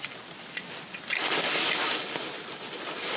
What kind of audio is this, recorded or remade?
recorded